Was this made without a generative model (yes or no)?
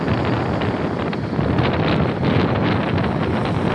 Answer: yes